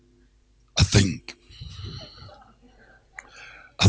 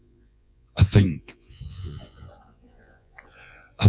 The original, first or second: first